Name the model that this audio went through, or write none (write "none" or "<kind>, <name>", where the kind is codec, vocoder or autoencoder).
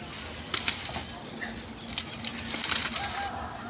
none